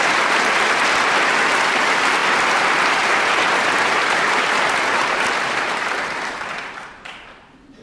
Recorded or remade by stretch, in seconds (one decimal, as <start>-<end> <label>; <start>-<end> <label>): 0.0-7.8 recorded